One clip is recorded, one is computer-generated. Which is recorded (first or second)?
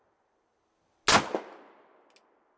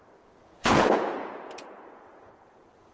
first